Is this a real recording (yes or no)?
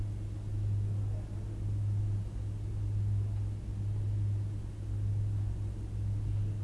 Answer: yes